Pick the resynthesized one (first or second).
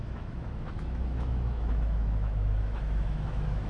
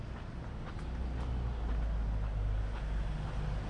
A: first